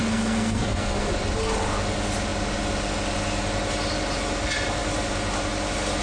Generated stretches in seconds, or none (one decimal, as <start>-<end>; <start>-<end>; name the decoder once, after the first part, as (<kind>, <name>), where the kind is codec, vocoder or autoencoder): 0.0-1.1 (codec, SNAC)

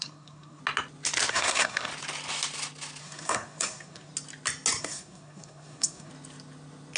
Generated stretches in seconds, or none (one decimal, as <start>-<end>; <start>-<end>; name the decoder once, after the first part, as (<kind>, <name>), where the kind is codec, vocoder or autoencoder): 0.0-0.6 (codec, SNAC); 1.3-1.9; 3.0-4.1; 4.8-6.1

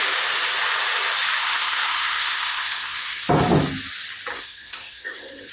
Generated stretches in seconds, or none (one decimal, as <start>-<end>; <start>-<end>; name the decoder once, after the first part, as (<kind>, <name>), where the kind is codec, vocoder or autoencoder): 1.4-3.3 (codec, SNAC); 4.3-5.5

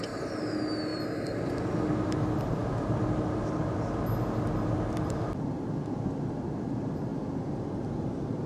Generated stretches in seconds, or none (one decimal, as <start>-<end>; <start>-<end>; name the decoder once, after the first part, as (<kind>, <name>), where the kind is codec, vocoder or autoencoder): none

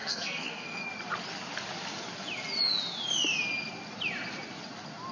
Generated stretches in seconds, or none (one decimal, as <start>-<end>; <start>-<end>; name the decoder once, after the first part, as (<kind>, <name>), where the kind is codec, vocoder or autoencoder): 0.0-0.8 (codec, SNAC)

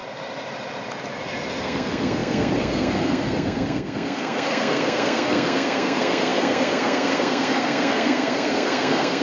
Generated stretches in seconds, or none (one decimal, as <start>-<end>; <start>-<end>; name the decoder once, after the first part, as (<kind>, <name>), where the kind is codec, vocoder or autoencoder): 1.6-9.2 (codec, SNAC)